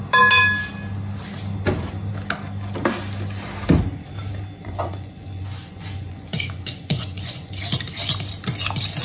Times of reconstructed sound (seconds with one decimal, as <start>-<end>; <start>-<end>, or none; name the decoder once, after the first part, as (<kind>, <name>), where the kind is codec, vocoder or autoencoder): 4.6-7.6 (vocoder, Vocos)